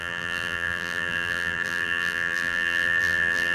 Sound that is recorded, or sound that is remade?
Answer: remade